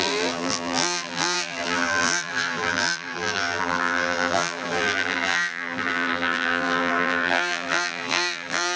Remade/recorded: remade